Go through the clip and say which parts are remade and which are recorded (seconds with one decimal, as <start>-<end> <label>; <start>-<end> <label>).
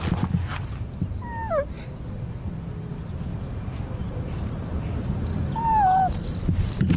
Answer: 0.0-0.5 recorded; 0.5-1.2 remade; 1.2-4.0 recorded; 4.0-5.7 remade; 5.7-7.0 recorded